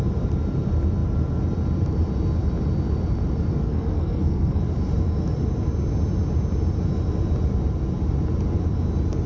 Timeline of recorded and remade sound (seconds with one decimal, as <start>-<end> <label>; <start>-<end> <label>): 0.0-3.6 recorded; 3.6-4.6 remade; 4.6-9.3 recorded